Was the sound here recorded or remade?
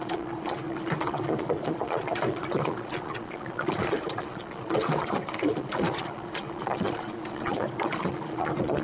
remade